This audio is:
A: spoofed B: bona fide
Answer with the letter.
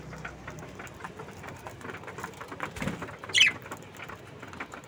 B